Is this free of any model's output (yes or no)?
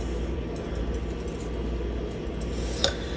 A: yes